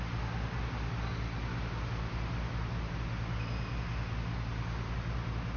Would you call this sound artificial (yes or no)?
no